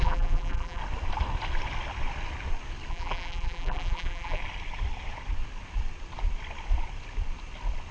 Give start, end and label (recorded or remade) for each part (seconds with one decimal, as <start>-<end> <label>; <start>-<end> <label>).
0.0-0.8 remade; 0.8-2.9 recorded; 2.9-4.4 remade; 4.4-7.9 recorded